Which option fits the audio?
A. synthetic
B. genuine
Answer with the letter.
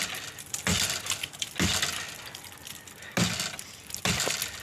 B